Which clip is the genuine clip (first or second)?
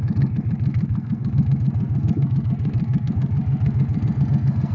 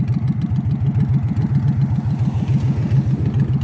second